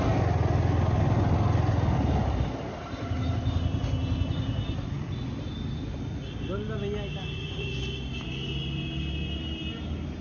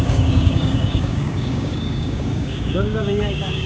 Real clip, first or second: first